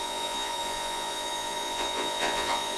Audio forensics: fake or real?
fake